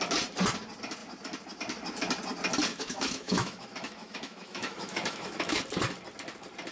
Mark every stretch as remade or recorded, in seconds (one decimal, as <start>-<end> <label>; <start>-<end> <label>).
0.0-2.7 recorded; 2.7-5.6 remade; 5.6-6.7 recorded